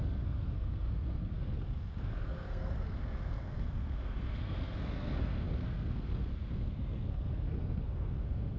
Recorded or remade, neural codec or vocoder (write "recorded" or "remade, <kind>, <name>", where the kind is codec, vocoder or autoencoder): remade, codec, SNAC